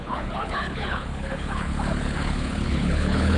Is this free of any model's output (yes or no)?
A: no